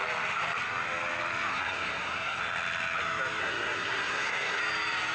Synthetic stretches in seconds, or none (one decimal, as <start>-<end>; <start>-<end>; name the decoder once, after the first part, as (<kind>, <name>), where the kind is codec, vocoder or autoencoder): 1.5-2.4 (codec, SNAC); 3.4-4.6